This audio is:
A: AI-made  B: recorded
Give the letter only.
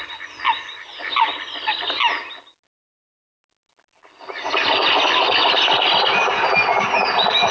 B